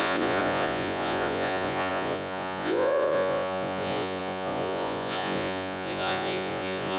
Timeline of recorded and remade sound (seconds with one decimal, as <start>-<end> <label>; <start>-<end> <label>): 0.0-7.0 remade